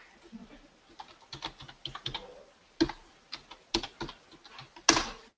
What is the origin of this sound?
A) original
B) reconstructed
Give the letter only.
A